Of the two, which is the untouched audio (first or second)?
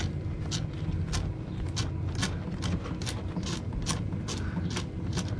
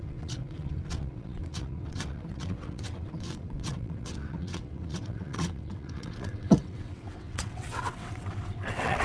first